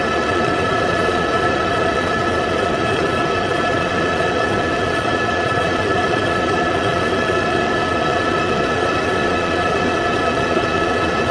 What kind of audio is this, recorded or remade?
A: remade